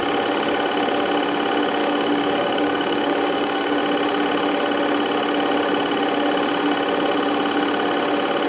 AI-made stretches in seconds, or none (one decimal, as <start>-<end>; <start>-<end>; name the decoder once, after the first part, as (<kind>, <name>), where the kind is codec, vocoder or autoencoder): 1.8-3.8 (codec, DAC)